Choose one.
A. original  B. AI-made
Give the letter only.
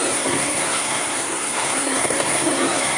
B